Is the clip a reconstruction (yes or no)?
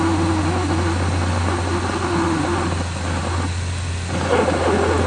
no